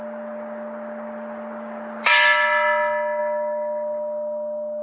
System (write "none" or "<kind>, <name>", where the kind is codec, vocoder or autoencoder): none